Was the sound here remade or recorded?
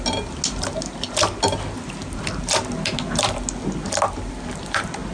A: recorded